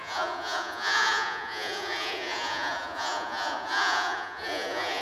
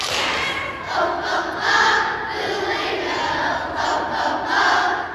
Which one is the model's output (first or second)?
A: first